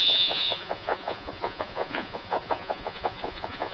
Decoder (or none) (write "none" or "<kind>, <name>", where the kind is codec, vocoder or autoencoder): vocoder, Vocos